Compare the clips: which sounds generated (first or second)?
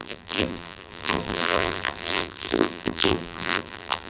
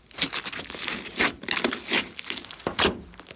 first